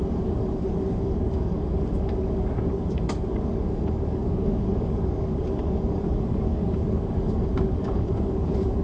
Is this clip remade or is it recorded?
remade